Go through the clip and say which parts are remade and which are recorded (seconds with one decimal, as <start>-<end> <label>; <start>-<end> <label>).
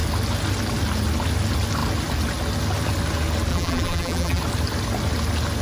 0.0-3.5 recorded; 3.5-4.4 remade; 4.4-5.6 recorded